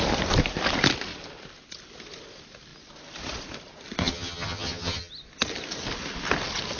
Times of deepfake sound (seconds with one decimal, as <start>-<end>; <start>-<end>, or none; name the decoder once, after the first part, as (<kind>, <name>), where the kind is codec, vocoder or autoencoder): 4.0-5.1 (vocoder, HiFi-GAN)